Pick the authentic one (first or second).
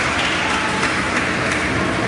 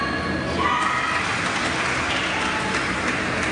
second